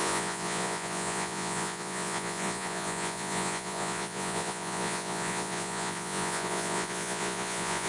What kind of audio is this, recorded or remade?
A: remade